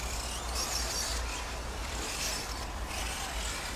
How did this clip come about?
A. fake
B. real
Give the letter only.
B